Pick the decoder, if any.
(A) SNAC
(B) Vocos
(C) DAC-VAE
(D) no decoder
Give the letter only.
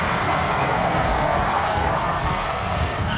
A